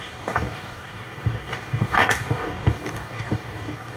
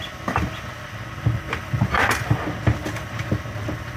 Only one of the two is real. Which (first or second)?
second